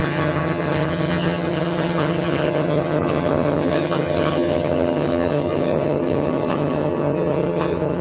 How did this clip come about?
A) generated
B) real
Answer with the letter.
A